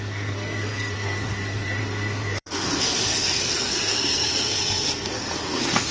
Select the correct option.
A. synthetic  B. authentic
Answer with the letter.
A